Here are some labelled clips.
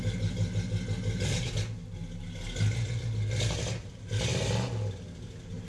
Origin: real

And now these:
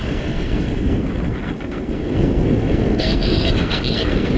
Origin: fake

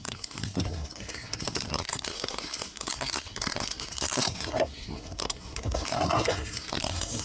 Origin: fake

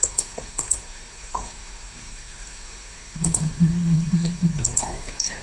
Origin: fake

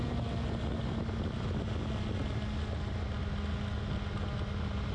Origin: real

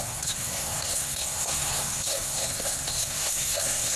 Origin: fake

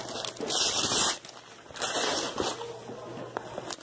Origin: real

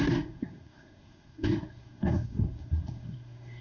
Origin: fake